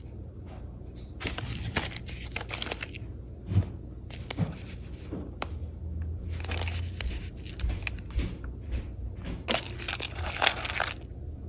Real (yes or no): yes